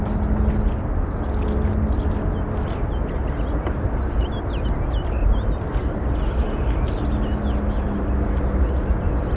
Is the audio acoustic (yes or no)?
yes